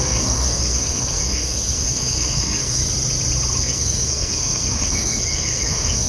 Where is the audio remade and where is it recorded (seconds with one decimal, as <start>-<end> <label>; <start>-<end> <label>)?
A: 0.0-2.8 remade; 2.8-3.6 recorded; 3.6-6.1 remade

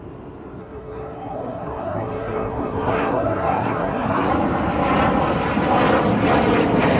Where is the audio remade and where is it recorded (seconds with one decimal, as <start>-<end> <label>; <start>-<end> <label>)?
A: 0.0-0.6 recorded; 0.6-4.3 remade; 4.3-7.0 recorded

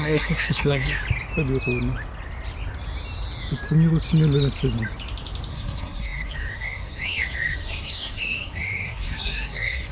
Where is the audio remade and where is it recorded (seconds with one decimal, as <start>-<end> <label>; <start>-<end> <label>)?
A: 0.0-1.0 remade; 1.0-5.5 recorded; 5.5-9.9 remade